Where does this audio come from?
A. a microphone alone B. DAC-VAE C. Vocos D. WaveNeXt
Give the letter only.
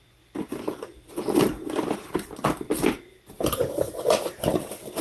A